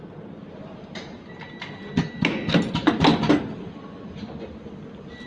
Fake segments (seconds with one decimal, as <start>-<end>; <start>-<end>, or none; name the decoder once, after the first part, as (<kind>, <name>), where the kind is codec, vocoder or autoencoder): none